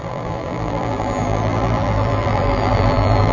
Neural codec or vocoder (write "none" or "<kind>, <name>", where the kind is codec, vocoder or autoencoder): vocoder, BigVGAN v2